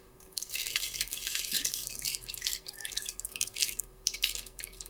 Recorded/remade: remade